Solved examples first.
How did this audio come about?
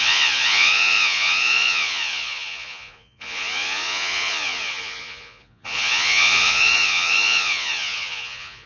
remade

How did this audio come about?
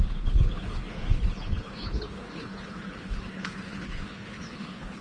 remade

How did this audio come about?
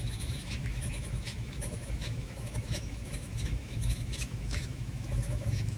remade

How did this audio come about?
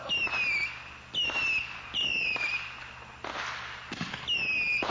recorded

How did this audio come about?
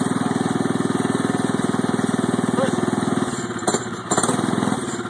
recorded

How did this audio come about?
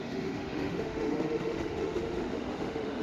remade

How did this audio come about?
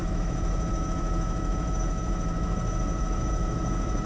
remade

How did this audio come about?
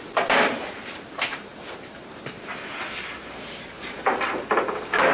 remade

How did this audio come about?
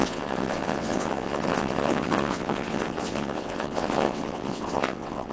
remade